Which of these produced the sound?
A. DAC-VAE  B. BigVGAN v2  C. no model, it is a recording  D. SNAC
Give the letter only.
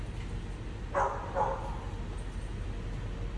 C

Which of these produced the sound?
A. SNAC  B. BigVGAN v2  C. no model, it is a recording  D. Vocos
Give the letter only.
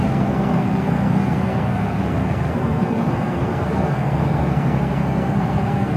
A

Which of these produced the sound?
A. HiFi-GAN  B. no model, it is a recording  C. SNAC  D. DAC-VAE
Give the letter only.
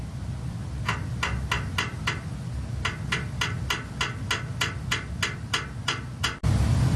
B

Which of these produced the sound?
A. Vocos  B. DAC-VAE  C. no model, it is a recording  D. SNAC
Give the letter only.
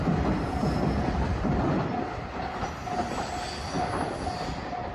C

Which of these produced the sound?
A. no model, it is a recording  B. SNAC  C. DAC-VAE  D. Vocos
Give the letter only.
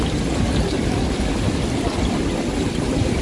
A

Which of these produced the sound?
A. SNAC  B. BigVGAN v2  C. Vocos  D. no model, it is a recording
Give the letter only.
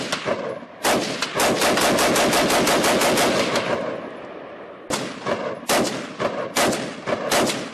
D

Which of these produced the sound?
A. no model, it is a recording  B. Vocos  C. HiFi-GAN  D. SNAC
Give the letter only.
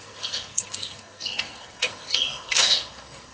D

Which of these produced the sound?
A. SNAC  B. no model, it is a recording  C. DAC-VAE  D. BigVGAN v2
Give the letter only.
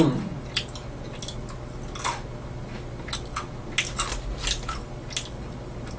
B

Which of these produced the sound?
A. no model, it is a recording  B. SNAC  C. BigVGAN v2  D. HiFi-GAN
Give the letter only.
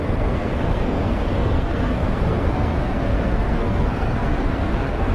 B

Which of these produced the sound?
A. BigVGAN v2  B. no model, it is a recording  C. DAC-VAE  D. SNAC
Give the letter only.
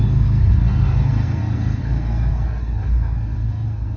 D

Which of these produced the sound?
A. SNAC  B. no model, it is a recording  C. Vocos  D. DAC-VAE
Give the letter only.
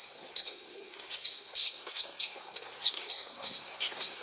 A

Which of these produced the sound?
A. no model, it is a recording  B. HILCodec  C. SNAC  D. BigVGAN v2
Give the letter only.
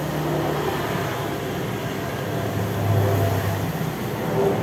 A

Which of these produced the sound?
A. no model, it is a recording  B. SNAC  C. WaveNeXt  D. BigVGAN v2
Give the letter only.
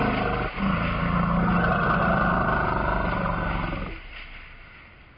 A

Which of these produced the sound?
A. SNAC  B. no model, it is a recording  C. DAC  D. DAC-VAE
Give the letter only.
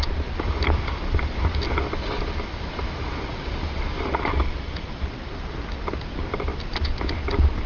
B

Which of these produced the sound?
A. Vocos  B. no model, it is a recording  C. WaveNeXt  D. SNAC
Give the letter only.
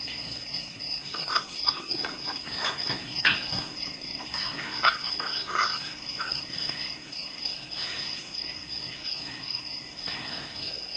D